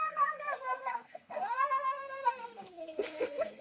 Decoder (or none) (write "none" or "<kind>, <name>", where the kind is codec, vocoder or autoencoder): codec, SNAC